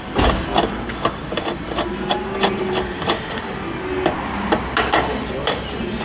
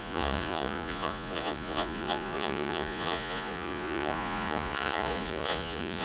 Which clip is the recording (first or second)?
first